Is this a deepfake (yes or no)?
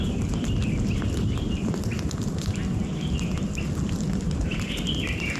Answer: no